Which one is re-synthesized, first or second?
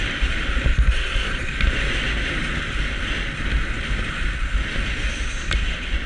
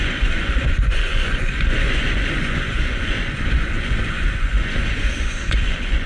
second